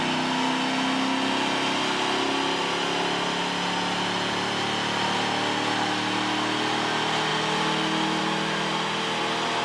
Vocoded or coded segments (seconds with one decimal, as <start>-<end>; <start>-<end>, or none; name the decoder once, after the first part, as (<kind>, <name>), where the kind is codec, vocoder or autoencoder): none